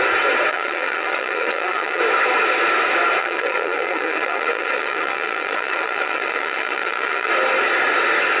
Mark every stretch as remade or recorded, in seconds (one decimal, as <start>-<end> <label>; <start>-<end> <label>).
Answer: 0.0-0.5 recorded; 0.5-2.0 remade; 2.0-3.2 recorded; 3.2-7.3 remade; 7.3-8.4 recorded